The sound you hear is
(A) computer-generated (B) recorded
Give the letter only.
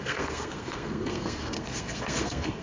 A